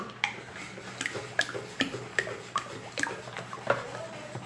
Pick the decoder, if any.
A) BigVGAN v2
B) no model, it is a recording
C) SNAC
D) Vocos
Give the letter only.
B